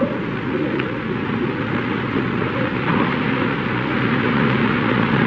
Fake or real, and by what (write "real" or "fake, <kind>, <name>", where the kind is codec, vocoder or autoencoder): fake, vocoder, Vocos